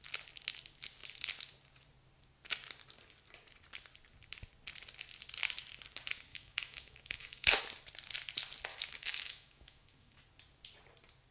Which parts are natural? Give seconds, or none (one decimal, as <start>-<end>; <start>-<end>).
0.0-6.3; 7.6-8.7; 10.2-11.3

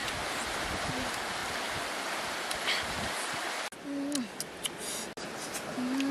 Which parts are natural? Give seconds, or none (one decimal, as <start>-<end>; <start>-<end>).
0.0-6.1

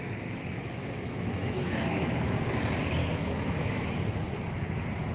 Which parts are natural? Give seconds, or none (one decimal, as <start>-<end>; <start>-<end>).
0.0-0.6; 2.6-3.0; 3.7-5.1

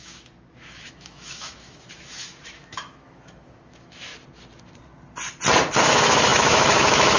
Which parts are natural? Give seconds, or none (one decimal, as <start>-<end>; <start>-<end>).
4.1-5.8